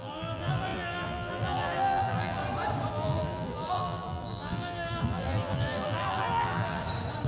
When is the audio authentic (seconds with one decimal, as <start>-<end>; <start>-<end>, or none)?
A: 2.4-2.9; 6.8-7.3